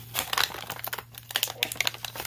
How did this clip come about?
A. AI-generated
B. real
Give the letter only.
B